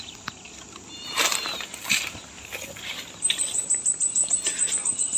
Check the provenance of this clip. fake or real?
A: fake